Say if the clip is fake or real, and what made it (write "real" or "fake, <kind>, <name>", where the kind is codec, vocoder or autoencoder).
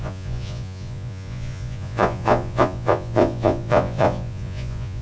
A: fake, vocoder, Vocos